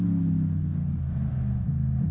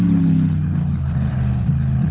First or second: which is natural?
first